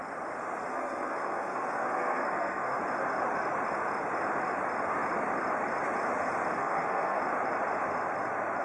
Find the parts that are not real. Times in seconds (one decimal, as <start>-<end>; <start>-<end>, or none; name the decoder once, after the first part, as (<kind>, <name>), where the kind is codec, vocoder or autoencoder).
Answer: 0.7-2.8 (codec, SNAC); 6.6-7.2